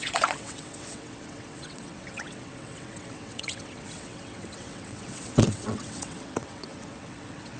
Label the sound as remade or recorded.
remade